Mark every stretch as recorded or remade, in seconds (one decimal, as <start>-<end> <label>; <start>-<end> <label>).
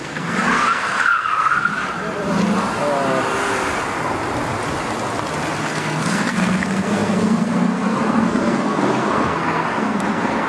0.0-1.7 remade; 1.7-5.6 recorded; 5.6-10.5 remade